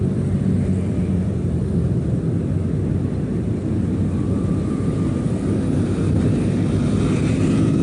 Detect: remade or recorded recorded